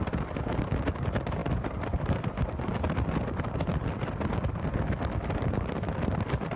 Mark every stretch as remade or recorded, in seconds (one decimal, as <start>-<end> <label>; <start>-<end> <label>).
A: 0.0-6.6 recorded